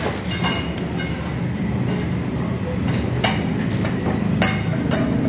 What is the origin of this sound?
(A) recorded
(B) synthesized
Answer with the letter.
A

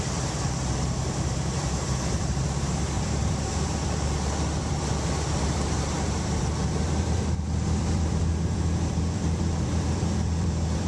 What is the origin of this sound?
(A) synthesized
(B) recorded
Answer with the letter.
A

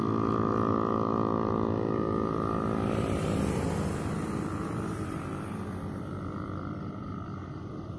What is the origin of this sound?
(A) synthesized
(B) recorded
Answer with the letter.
B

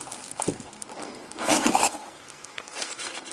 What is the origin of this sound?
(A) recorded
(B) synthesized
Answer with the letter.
B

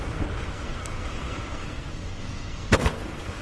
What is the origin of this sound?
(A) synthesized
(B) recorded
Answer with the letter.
A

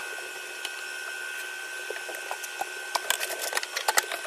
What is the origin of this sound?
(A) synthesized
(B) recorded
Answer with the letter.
B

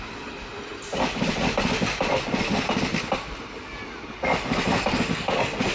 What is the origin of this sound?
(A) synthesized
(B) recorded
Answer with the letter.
B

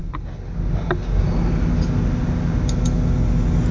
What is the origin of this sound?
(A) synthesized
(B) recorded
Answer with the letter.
B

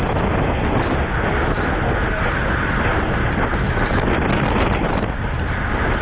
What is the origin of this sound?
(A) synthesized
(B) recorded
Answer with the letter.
B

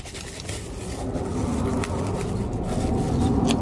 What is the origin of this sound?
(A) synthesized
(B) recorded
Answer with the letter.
B